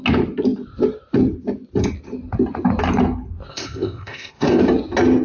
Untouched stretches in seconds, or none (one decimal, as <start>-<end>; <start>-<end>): 0.0-3.5; 4.6-5.2